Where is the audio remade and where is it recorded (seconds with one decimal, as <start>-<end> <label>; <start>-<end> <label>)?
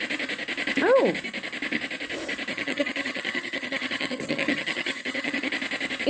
0.0-2.5 recorded; 2.5-5.5 remade; 5.5-6.1 recorded